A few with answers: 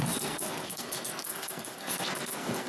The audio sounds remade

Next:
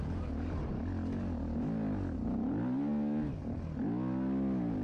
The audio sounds recorded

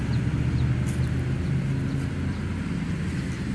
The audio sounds recorded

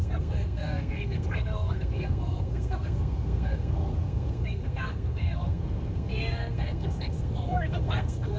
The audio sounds remade